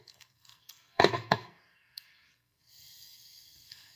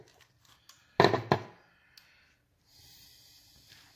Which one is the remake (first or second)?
first